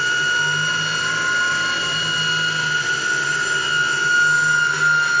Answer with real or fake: real